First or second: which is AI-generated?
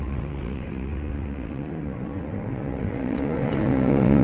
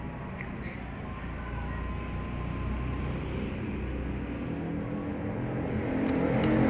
first